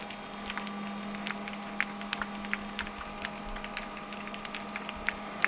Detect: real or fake real